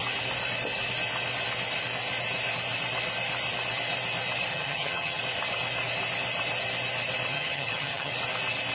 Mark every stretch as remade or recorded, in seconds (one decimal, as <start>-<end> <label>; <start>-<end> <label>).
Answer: 0.0-4.5 recorded; 4.5-5.2 remade; 5.2-7.3 recorded; 7.3-8.1 remade; 8.1-8.7 recorded